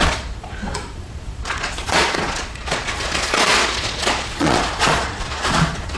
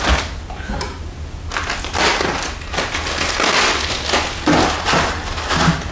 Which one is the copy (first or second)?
first